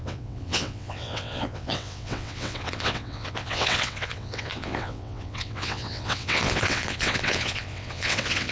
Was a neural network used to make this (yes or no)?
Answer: yes